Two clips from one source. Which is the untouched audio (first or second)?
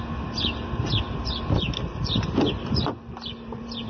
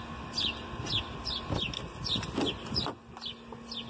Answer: second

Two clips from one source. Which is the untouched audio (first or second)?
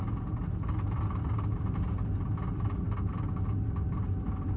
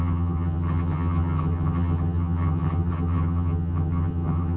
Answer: first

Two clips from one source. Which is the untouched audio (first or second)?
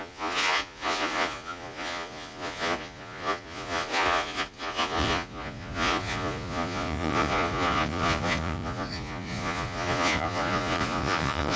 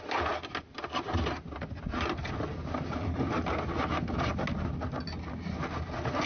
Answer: second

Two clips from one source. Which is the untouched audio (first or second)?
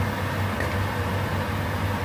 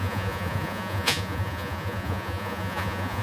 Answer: first